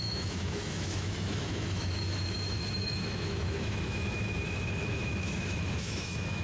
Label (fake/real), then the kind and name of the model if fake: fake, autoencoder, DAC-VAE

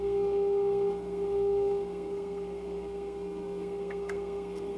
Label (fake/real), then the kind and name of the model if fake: fake, codec, SNAC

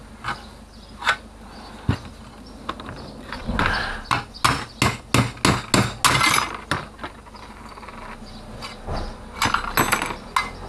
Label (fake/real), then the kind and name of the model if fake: real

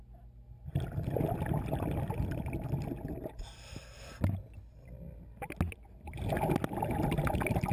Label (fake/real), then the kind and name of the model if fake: real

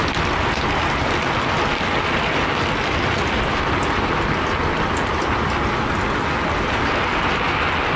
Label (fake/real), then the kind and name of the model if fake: real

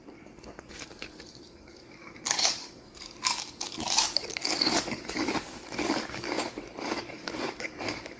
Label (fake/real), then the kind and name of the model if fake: fake, codec, DAC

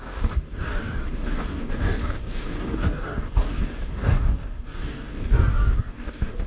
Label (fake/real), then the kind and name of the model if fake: fake, codec, DAC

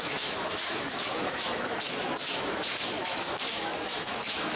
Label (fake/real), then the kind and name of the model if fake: fake, autoencoder, DAC-VAE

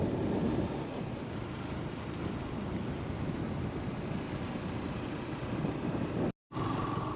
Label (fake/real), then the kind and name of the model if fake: real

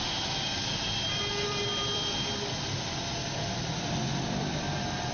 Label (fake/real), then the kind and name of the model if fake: fake, vocoder, BigVGAN v2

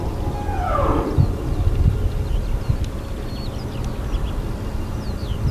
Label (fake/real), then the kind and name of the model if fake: real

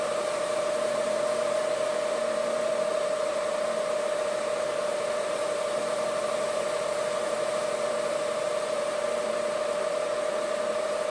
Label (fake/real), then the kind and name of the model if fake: fake, vocoder, BigVGAN v2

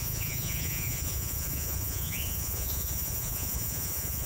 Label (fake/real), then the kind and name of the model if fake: fake, vocoder, Vocos